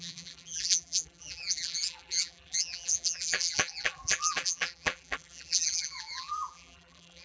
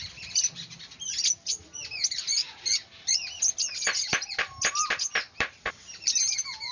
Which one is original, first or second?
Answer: second